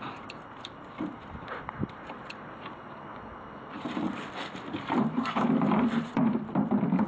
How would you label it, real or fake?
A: fake